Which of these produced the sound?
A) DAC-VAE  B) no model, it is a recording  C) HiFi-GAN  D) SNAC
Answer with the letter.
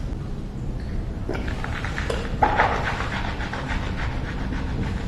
B